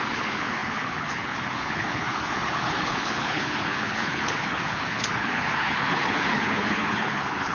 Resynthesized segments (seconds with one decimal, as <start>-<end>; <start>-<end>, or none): 0.0-7.5